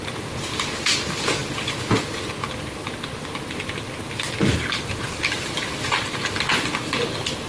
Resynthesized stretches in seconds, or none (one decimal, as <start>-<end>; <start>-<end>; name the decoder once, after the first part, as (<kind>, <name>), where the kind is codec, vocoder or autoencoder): 1.4-2.0 (vocoder, BigVGAN v2); 4.5-6.5